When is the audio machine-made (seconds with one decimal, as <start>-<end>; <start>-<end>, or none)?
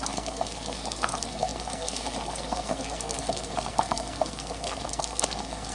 0.0-5.7